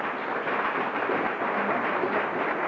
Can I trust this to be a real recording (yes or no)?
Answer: yes